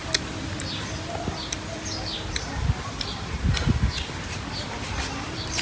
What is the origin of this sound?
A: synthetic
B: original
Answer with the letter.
B